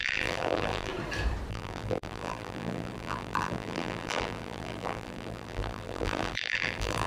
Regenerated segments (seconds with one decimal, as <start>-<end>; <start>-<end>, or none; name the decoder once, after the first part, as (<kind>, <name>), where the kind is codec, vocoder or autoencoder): 0.0-0.9 (vocoder, BigVGAN v2); 1.5-7.1